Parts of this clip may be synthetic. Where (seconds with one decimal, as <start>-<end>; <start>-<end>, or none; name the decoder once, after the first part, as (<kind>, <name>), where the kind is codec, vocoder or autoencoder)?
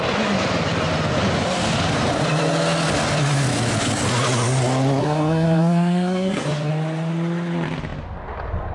5.0-6.7 (codec, SNAC)